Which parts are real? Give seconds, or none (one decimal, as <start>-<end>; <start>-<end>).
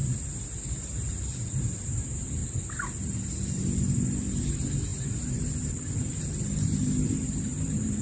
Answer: 0.0-0.7; 2.4-3.0